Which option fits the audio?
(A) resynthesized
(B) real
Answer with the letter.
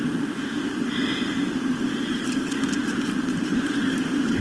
B